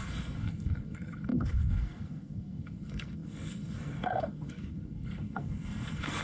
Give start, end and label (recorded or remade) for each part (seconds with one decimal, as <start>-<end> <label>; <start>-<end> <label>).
0.0-6.2 remade